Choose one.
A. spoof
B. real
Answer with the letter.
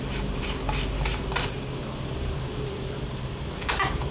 B